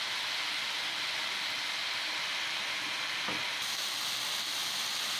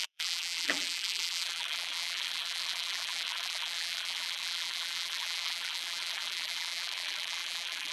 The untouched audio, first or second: first